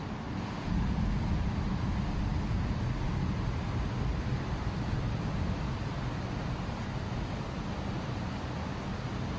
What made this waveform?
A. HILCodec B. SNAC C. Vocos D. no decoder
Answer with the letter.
D